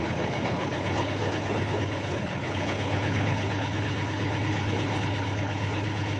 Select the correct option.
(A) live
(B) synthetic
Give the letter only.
B